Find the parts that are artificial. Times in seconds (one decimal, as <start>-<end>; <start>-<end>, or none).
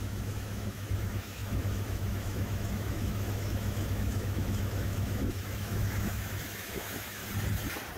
0.0-7.2